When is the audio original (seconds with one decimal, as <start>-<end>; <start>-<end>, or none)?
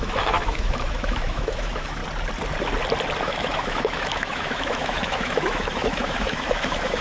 2.0-3.2